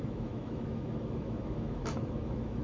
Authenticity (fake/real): fake